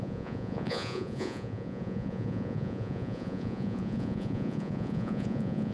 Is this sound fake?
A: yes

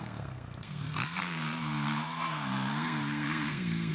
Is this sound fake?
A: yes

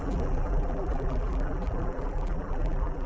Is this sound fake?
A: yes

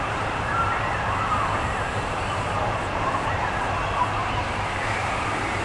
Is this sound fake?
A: yes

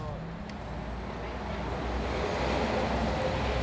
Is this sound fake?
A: no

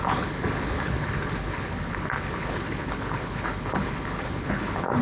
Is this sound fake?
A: yes